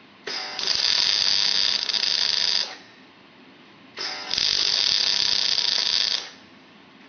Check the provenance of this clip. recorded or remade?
recorded